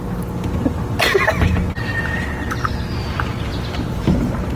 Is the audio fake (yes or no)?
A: no